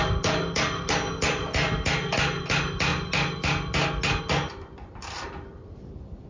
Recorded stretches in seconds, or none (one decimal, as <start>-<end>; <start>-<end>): 0.0-6.3